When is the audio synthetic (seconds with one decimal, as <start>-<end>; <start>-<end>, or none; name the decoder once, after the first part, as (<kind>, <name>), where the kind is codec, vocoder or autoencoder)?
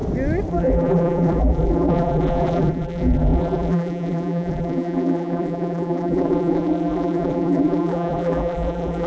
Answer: 0.5-9.1 (vocoder, BigVGAN v2)